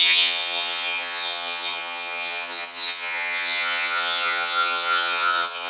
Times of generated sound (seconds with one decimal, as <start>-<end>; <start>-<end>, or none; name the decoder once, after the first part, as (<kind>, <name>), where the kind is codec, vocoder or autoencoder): 0.0-5.7 (vocoder, HiFi-GAN)